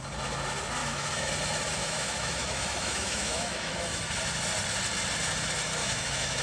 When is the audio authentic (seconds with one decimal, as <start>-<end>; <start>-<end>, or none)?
0.0-0.8; 1.3-1.8; 4.0-5.8